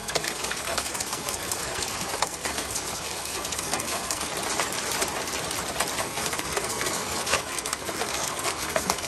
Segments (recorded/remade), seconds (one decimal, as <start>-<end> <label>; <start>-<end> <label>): 0.0-4.3 remade; 4.3-6.0 recorded; 6.0-9.1 remade